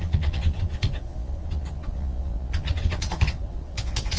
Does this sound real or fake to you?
fake